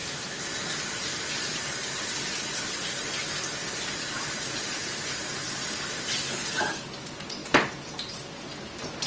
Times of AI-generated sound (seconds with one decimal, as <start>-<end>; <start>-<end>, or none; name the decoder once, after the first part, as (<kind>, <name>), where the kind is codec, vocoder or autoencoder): 0.0-5.0 (vocoder, BigVGAN v2); 7.4-8.0

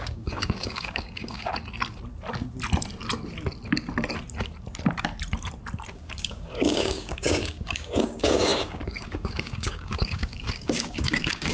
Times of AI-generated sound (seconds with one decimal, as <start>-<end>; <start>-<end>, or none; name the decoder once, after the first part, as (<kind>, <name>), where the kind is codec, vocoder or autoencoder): 0.0-1.5 (codec, DAC); 5.9-11.5

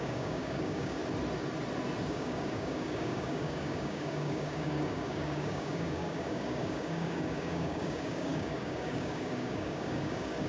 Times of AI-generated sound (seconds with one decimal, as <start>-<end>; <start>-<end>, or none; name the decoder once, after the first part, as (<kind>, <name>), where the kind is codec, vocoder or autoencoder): 0.0-1.0 (codec, DAC); 2.1-10.5

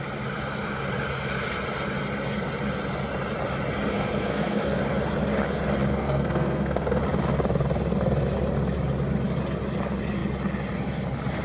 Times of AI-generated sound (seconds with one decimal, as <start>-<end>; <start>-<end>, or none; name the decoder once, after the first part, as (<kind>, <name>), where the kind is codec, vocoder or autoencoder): 3.9-4.8 (codec, SNAC); 5.9-7.0

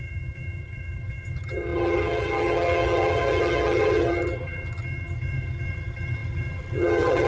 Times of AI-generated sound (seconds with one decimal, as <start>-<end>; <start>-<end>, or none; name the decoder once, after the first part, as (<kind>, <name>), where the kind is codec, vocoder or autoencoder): 0.0-7.3 (vocoder, HiFi-GAN)

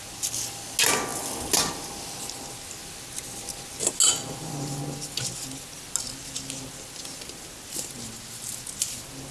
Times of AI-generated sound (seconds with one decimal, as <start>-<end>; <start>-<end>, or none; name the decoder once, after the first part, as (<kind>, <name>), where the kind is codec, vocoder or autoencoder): none

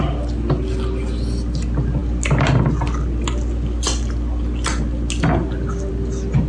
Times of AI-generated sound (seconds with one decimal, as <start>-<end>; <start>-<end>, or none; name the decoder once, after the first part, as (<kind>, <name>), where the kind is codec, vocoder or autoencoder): none